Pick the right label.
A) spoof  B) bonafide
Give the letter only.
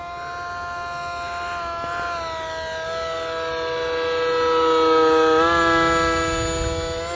B